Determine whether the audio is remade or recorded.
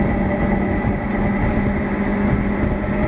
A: recorded